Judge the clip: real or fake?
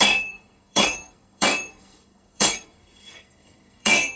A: fake